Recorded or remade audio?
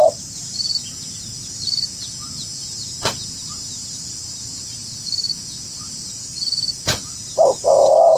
remade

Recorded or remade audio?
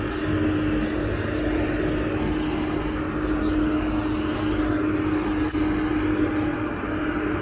recorded